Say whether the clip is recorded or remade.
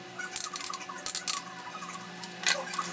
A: recorded